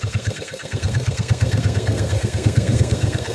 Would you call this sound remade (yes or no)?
yes